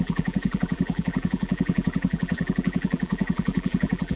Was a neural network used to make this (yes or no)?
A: yes